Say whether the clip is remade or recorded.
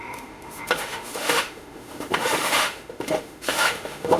remade